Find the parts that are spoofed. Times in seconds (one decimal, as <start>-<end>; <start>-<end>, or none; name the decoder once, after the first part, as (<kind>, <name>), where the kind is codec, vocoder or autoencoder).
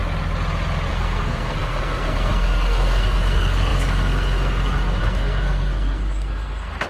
0.9-6.9 (codec, SNAC)